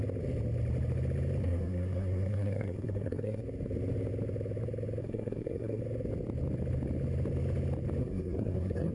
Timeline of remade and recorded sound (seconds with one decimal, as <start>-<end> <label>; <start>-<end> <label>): 0.0-1.4 recorded; 1.4-3.4 remade; 3.4-5.0 recorded; 5.0-5.8 remade; 5.8-8.0 recorded; 8.0-8.9 remade